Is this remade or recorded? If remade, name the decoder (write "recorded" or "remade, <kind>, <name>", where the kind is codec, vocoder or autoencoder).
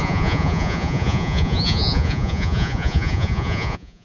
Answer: remade, vocoder, Vocos